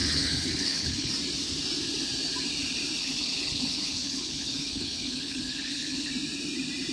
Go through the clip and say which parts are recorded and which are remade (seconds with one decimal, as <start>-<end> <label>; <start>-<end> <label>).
0.0-1.1 remade; 1.1-3.0 recorded; 3.0-6.1 remade; 6.1-6.9 recorded